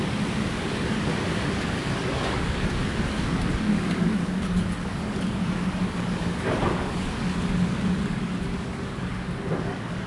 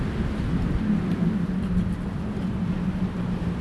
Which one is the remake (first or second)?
first